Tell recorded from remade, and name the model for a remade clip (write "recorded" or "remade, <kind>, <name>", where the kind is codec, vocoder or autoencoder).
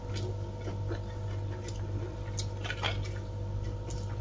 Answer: recorded